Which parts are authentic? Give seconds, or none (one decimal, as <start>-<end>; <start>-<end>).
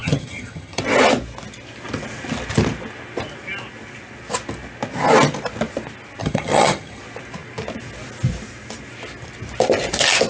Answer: 0.8-6.2; 7.0-10.3